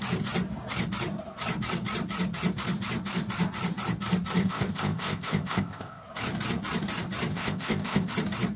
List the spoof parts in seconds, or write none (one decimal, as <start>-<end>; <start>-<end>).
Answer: 4.4-6.0; 7.3-8.1

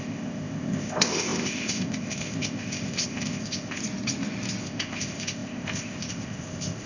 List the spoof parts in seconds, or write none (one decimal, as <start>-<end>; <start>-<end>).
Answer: 0.0-3.8; 4.6-6.9

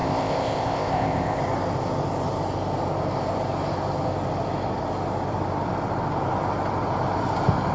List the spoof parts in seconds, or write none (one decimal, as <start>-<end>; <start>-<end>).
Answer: 0.0-1.4

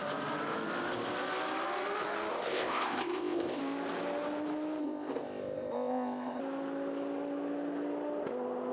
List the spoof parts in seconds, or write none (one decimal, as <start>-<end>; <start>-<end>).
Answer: 2.3-3.6; 4.8-6.4

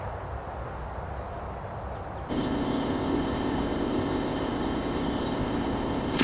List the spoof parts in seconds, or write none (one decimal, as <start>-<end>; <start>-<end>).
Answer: 2.3-6.2